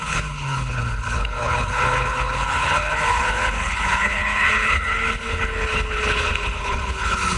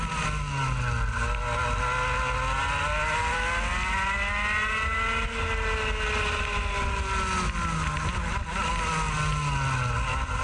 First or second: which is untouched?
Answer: second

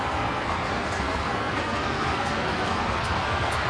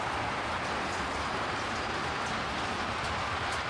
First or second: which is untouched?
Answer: second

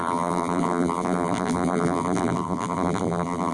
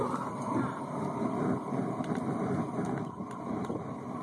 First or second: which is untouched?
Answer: second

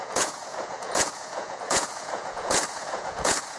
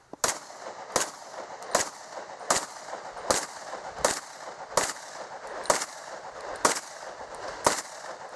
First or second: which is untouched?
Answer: second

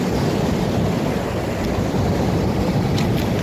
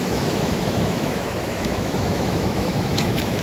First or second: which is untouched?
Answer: first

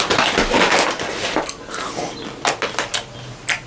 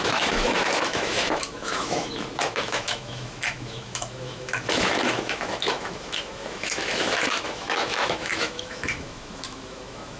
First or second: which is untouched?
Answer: first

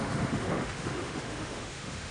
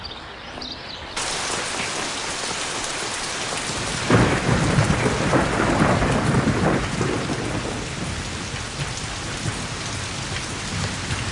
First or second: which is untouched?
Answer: second